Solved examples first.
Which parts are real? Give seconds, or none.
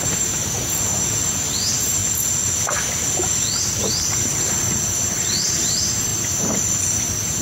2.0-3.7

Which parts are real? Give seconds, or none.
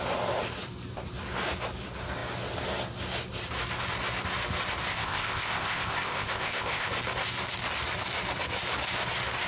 0.0-4.9; 6.9-9.5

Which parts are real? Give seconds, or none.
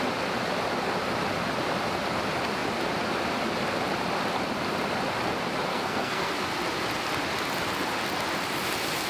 0.0-5.7; 6.3-9.1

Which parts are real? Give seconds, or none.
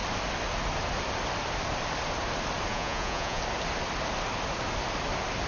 0.0-2.7; 3.4-5.5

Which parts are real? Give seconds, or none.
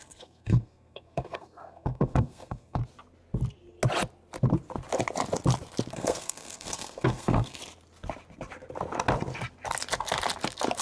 2.8-5.9; 7.6-10.8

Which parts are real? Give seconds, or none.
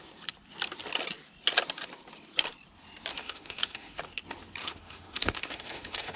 0.0-3.1; 4.0-4.6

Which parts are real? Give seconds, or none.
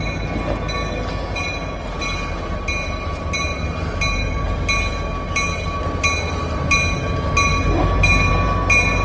0.0-9.0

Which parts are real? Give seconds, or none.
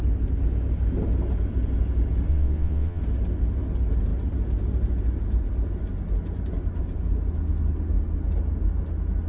0.0-2.3; 3.0-9.3